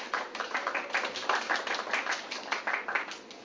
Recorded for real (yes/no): yes